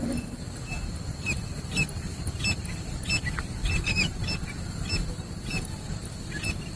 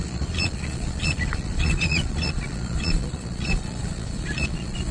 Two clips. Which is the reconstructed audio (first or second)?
second